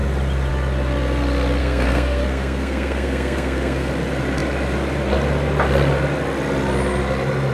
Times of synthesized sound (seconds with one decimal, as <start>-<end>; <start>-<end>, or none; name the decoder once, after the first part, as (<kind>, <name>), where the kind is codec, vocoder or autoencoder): 1.6-3.9 (codec, SNAC)